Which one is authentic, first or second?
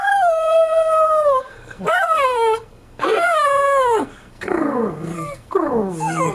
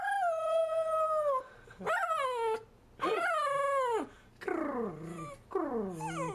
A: second